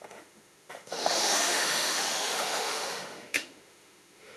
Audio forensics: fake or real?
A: fake